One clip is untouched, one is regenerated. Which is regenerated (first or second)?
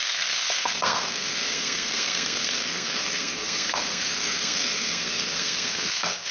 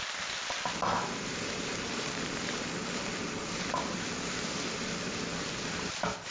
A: first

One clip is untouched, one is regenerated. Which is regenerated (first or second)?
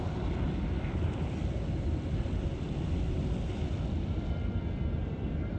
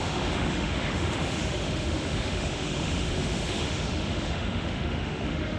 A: second